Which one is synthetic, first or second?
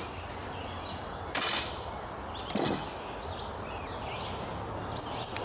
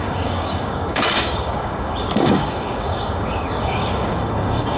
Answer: second